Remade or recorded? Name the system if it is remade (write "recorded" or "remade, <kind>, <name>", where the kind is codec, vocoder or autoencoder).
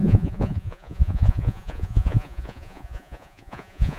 remade, vocoder, Vocos